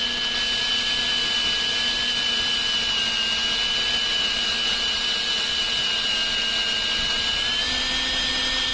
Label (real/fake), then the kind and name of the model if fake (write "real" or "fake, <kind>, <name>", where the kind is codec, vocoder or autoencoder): real